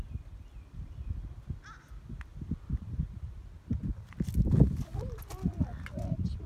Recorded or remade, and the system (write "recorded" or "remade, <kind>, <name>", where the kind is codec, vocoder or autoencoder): recorded